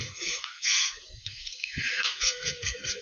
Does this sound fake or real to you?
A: fake